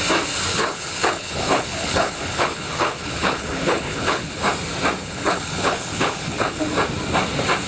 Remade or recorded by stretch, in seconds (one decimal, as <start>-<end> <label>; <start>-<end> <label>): 0.0-0.5 recorded; 0.5-4.4 remade; 4.4-5.0 recorded; 5.0-6.6 remade; 6.6-7.7 recorded